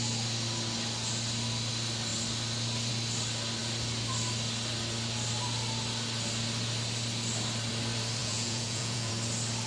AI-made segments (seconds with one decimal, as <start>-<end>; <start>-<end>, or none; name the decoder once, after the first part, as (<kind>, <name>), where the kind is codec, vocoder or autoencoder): 8.2-9.1 (vocoder, Vocos)